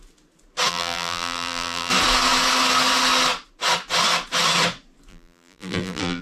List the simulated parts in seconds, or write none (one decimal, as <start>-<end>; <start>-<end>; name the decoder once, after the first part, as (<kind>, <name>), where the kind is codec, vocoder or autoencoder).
0.7-1.9 (vocoder, BigVGAN v2); 5.1-6.2

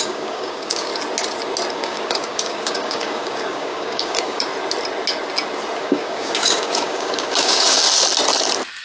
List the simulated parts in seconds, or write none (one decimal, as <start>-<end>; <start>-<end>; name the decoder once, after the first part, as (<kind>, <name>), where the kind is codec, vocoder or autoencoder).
0.0-0.9 (codec, DAC); 1.7-4.5; 5.8-7.8

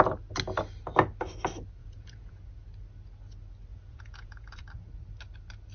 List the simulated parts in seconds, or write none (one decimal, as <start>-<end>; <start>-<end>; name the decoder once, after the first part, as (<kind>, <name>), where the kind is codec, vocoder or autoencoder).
1.8-2.4 (vocoder, Vocos); 3.7-4.6